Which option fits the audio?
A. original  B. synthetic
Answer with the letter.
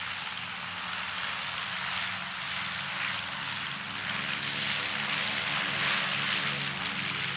A